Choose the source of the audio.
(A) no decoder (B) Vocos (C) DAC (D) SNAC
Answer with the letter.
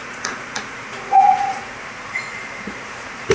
B